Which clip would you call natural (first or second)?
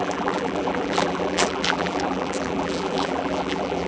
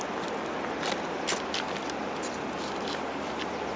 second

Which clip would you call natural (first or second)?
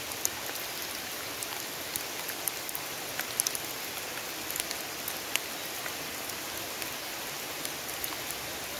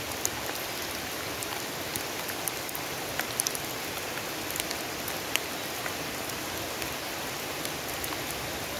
first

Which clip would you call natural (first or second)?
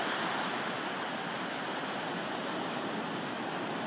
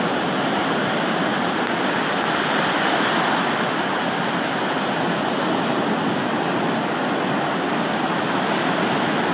second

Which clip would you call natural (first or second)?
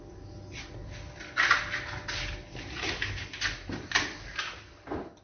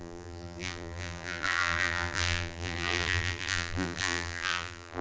first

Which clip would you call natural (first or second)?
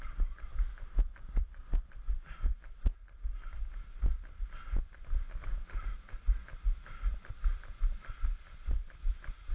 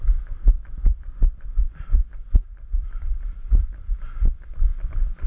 first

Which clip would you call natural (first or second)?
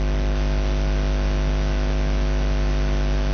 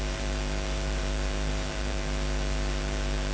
first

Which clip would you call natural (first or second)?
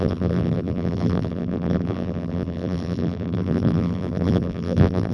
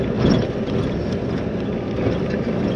second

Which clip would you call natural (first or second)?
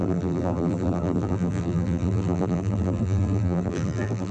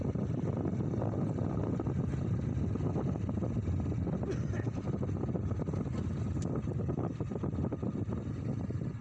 second